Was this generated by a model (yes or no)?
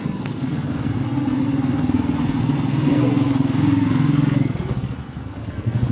yes